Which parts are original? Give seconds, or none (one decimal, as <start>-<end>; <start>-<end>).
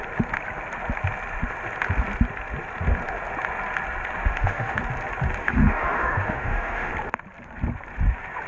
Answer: 0.0-4.2; 4.8-5.4; 6.9-8.5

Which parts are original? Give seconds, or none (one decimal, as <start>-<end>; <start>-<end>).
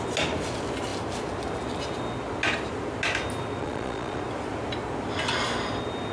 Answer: 0.0-3.6; 4.2-6.1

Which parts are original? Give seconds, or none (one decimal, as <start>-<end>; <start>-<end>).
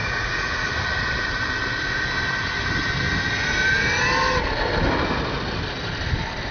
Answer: 0.7-6.5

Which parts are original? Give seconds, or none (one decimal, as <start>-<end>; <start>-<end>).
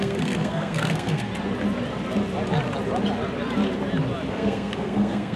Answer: 1.3-4.3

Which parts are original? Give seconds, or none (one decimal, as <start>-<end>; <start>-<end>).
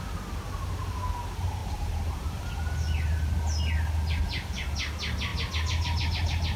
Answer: 0.0-1.6; 2.5-6.6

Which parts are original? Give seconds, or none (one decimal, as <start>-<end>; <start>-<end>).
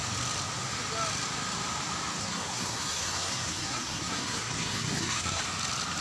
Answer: 0.0-2.2; 5.4-6.0